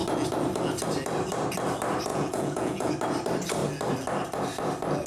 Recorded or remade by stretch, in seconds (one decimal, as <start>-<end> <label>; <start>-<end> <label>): 0.0-2.1 recorded; 2.1-2.9 remade; 2.9-5.1 recorded